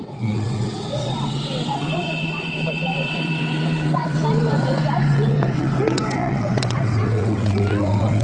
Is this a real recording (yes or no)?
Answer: no